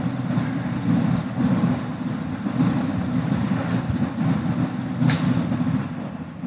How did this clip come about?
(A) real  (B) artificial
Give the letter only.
A